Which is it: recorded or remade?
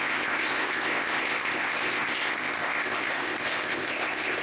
remade